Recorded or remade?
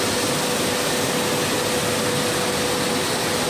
recorded